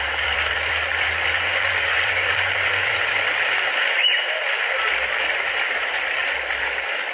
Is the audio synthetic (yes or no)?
yes